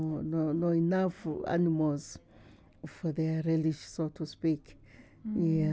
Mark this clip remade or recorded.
recorded